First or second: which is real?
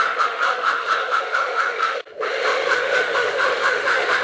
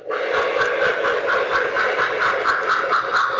second